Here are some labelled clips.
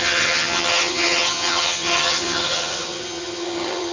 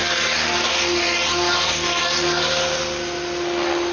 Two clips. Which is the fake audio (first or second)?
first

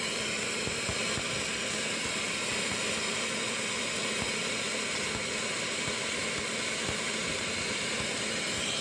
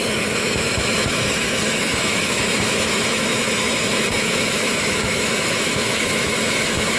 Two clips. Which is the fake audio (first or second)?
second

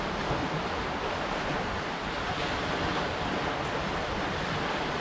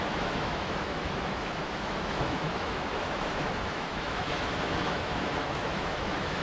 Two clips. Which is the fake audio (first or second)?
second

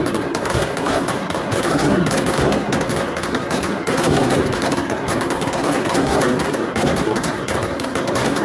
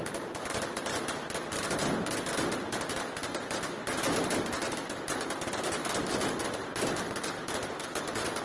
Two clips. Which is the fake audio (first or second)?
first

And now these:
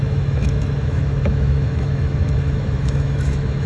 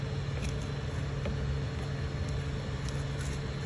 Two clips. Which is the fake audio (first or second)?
first